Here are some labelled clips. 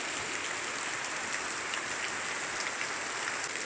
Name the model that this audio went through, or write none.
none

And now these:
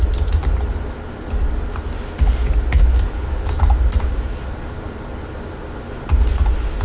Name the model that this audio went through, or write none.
none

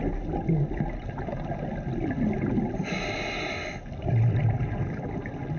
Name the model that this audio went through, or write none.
none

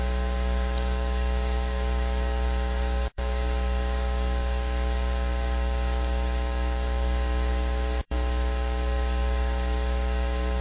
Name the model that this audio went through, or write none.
codec, DAC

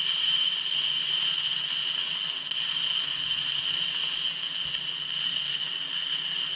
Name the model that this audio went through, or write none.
none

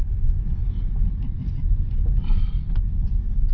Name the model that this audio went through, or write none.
none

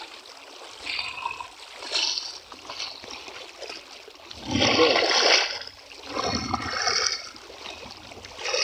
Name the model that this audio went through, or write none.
none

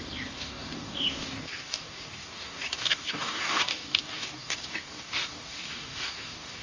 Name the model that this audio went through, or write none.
codec, DAC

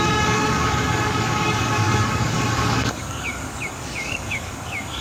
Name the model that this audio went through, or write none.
codec, DAC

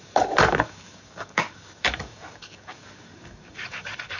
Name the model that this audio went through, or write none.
codec, DAC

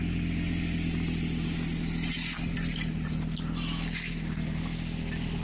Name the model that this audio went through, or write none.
none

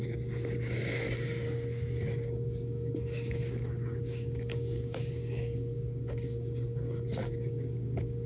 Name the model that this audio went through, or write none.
codec, DAC